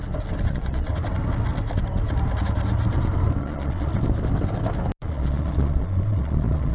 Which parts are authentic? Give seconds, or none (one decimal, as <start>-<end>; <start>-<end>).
0.0-0.5; 0.9-3.4; 3.9-5.0